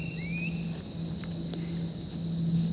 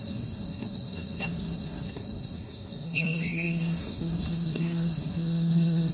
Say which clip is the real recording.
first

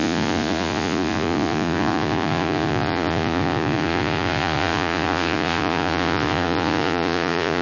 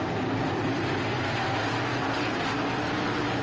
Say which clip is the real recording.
second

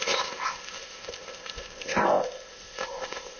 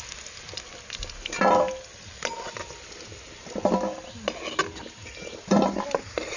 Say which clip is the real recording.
second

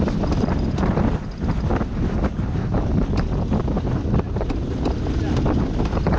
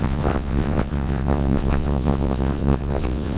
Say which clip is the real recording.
first